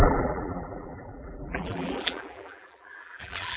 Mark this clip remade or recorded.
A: remade